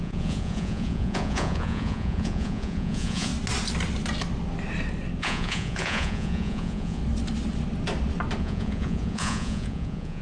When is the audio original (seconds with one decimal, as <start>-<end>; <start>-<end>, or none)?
3.3-5.2; 7.0-8.4

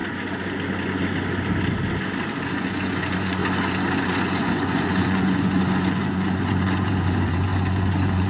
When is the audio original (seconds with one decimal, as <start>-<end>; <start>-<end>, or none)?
0.0-2.5; 3.4-4.0

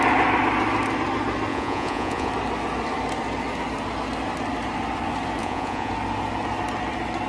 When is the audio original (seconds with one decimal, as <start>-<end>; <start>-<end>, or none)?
0.0-1.5; 2.3-5.4; 5.9-7.3

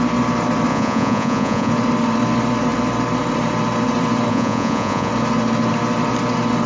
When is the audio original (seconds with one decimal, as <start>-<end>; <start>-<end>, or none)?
0.0-0.7; 1.7-4.3; 5.1-6.7